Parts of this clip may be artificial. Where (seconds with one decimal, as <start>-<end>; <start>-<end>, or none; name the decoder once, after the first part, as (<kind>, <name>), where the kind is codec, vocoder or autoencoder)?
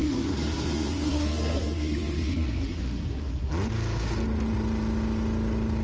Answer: 0.0-3.5 (codec, SNAC)